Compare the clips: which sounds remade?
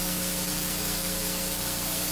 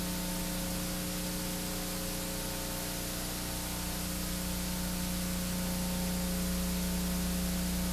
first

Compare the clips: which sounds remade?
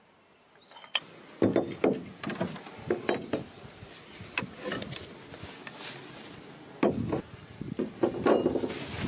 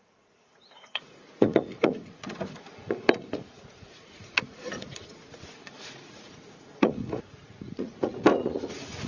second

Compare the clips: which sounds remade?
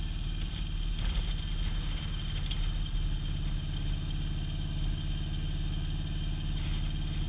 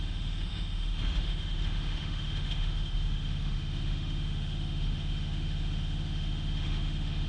second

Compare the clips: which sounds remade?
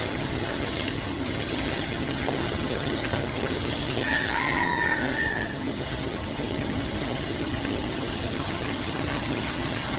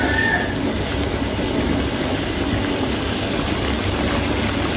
first